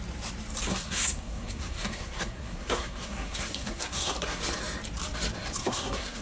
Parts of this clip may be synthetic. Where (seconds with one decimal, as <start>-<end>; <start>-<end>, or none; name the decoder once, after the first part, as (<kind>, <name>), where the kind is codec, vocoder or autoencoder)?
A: 0.7-4.4 (codec, SNAC); 5.6-6.2